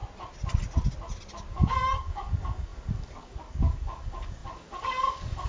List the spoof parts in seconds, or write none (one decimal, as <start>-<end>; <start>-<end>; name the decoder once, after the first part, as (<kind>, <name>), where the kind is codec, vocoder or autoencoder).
1.5-5.5 (codec, DAC)